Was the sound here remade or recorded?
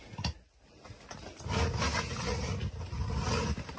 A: recorded